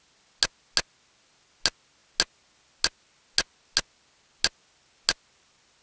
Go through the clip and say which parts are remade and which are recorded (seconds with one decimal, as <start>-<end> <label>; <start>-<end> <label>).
0.0-5.8 recorded